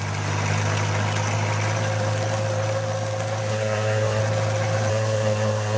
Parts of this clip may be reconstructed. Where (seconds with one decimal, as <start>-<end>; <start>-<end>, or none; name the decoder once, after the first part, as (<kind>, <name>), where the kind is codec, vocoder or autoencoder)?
3.5-4.2 (codec, SNAC); 4.9-5.8